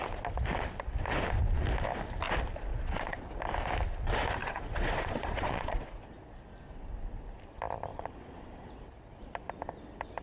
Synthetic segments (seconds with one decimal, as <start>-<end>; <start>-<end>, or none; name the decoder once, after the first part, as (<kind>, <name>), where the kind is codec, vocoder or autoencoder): 2.7-3.4 (vocoder, Vocos); 4.4-6.2; 7.9-8.7